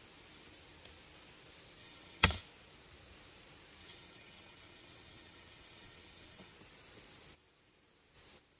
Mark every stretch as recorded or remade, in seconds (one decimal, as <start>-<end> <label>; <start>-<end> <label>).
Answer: 0.0-1.8 recorded; 1.8-2.4 remade; 2.4-3.8 recorded; 3.8-6.5 remade; 6.5-8.6 recorded